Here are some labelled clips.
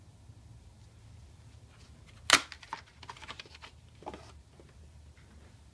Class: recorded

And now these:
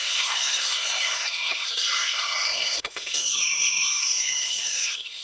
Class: remade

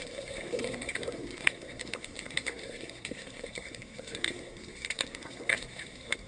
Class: remade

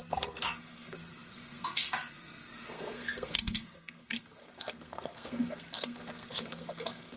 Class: remade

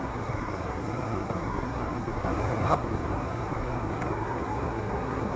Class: remade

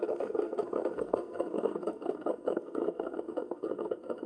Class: remade